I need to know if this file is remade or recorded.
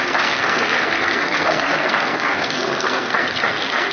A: remade